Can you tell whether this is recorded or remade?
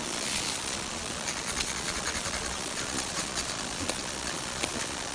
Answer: remade